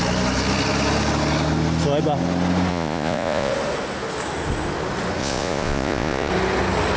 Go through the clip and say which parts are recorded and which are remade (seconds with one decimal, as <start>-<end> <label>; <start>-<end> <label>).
0.0-2.7 recorded; 2.7-3.5 remade; 3.5-5.2 recorded; 5.2-6.3 remade; 6.3-7.0 recorded